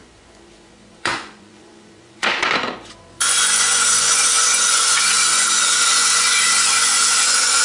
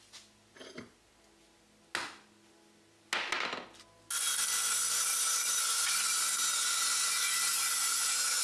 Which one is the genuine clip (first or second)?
second